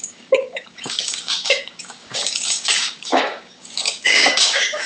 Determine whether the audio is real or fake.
fake